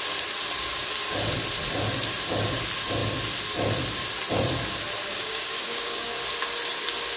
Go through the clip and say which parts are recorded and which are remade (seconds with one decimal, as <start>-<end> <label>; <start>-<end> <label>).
0.0-5.1 recorded; 5.1-6.2 remade; 6.2-7.2 recorded